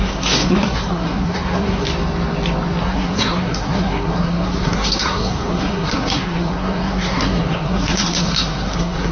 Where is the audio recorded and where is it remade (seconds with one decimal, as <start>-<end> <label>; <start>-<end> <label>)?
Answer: 0.0-1.9 remade; 1.9-2.8 recorded; 2.8-9.1 remade